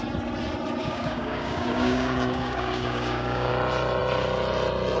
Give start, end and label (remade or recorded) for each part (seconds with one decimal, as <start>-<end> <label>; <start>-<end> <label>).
0.0-0.8 recorded; 0.8-3.5 remade; 3.5-5.0 recorded

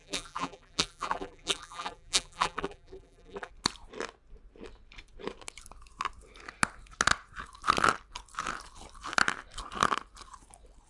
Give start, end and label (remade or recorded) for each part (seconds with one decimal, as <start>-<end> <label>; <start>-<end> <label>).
0.0-3.5 remade; 3.5-10.9 recorded

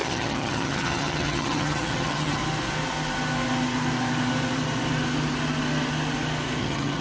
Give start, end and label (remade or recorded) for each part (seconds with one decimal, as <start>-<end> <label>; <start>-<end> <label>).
0.0-2.4 remade; 2.4-6.6 recorded; 6.6-7.0 remade

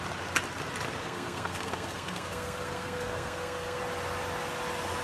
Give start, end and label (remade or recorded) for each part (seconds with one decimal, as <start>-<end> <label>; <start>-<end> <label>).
0.0-1.0 recorded; 1.0-3.8 remade; 3.8-5.0 recorded

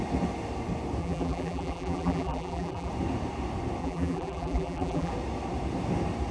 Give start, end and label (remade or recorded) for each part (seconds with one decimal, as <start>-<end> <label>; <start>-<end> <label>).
0.0-1.0 recorded; 1.0-2.9 remade; 2.9-3.8 recorded; 3.8-5.1 remade; 5.1-6.3 recorded

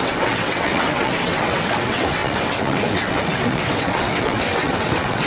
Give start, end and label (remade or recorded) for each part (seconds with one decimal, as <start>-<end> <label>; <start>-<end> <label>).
0.0-5.3 remade

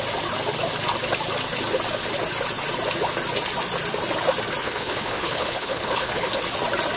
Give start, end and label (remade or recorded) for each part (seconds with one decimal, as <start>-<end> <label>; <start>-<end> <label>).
0.0-4.6 recorded; 4.6-6.3 remade; 6.3-7.0 recorded

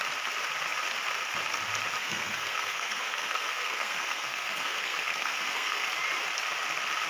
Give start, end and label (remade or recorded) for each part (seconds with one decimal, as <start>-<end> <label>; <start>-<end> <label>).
0.0-2.0 recorded; 2.0-5.9 remade; 5.9-7.1 recorded